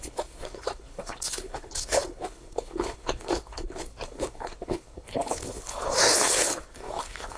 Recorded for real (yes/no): no